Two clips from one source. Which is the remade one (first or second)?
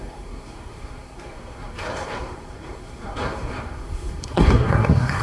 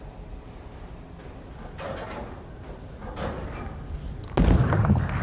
first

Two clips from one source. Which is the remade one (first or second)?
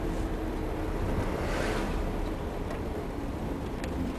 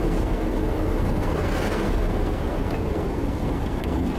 second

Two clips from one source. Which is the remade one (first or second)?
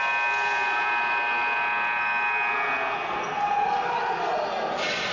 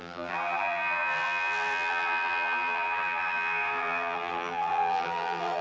second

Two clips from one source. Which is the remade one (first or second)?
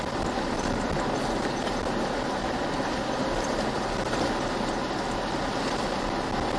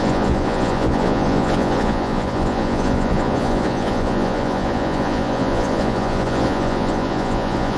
second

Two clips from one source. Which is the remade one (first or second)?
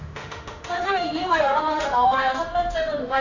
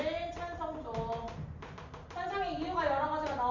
first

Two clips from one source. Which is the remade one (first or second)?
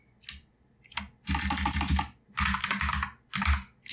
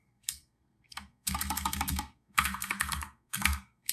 second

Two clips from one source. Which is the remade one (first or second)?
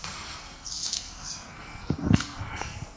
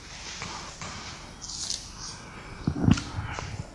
first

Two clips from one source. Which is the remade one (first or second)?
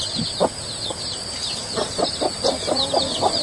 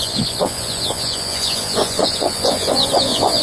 second